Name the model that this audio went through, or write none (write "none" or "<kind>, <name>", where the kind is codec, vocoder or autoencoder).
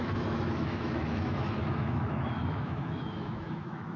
autoencoder, DAC-VAE